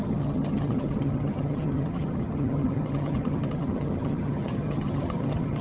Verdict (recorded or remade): remade